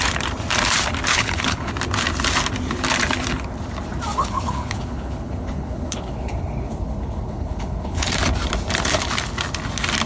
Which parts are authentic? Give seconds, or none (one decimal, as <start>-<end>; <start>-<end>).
0.0-1.1; 1.7-4.1; 8.1-10.1